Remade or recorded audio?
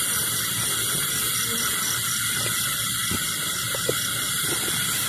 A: recorded